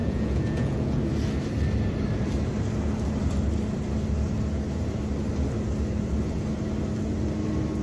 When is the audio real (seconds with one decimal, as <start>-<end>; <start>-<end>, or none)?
1.0-7.8